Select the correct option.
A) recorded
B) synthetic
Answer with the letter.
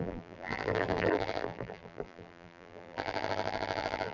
B